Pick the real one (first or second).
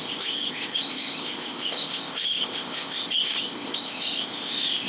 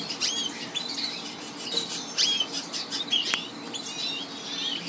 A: second